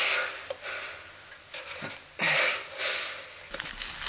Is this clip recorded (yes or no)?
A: yes